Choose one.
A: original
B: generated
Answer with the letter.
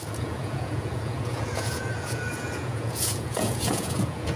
B